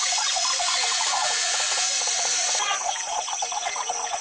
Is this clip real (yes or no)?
no